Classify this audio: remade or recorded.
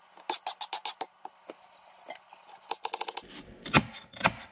recorded